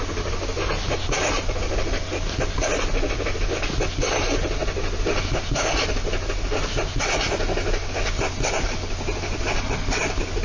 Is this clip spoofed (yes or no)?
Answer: no